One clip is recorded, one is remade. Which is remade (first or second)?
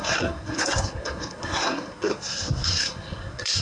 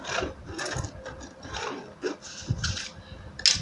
first